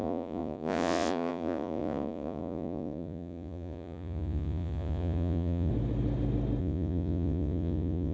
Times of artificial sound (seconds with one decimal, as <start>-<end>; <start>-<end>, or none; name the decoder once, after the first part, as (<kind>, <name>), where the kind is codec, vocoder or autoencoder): 0.0-5.7 (vocoder, Vocos); 6.6-8.1